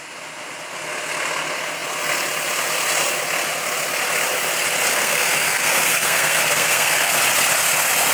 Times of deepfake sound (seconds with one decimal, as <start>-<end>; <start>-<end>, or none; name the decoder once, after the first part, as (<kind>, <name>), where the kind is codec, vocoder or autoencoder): 4.9-7.2 (codec, SNAC)